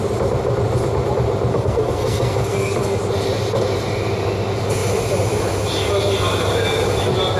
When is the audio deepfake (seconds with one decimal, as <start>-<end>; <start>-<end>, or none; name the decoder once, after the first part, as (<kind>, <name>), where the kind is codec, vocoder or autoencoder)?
1.5-3.0 (codec, SNAC)